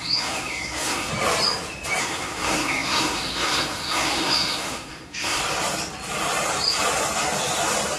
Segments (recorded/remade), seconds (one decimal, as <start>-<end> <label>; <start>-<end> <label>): 0.0-1.1 remade; 1.1-2.0 recorded; 2.0-5.4 remade; 5.4-8.0 recorded